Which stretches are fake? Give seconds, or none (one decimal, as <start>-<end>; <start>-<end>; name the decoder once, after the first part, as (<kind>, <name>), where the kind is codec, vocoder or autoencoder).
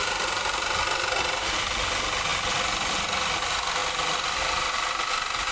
none